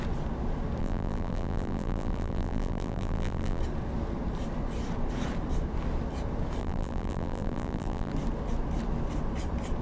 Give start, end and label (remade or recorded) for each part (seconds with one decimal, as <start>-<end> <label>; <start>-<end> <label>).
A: 0.0-0.8 recorded; 0.8-3.6 remade; 3.6-6.6 recorded; 6.6-8.1 remade; 8.1-9.8 recorded